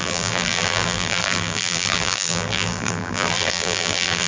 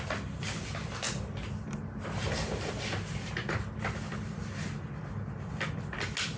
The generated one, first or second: first